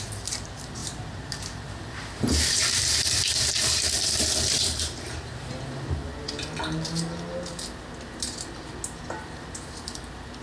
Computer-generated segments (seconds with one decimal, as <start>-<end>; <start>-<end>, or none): 0.0-6.1

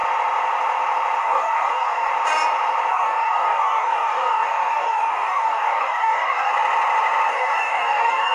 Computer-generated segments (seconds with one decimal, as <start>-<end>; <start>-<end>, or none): 1.2-2.1; 2.9-6.5; 7.3-8.3

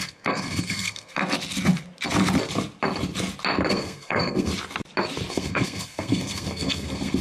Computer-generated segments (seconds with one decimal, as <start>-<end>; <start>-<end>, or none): 0.0-1.2; 3.7-4.5; 5.3-7.2

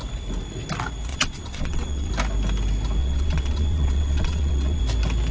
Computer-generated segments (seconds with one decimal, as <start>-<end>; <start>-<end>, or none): 1.1-2.1; 3.0-4.8